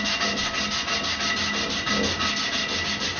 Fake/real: real